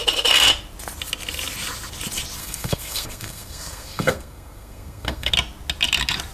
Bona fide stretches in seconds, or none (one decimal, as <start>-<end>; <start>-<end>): 0.0-2.4; 5.3-6.3